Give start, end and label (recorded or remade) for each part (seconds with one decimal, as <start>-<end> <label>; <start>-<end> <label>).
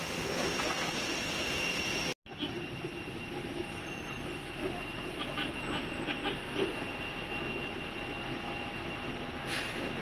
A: 0.0-10.0 recorded